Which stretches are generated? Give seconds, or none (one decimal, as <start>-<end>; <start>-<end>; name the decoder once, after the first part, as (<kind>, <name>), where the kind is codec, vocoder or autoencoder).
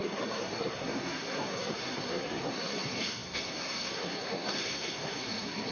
0.0-5.7 (codec, SNAC)